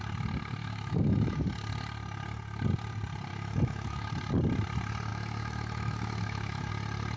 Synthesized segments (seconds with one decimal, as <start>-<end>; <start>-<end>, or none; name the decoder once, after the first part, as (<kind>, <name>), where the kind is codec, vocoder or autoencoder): 0.6-1.4 (autoencoder, DAC-VAE); 3.3-4.1; 5.1-6.7